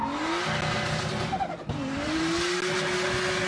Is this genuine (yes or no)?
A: yes